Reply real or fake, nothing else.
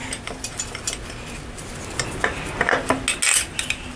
real